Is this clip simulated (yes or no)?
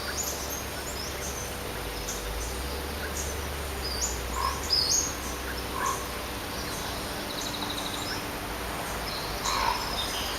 no